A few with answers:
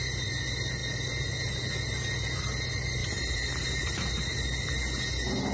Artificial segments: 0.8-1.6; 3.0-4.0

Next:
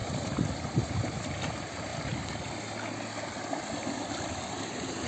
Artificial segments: 1.5-1.9; 4.5-5.1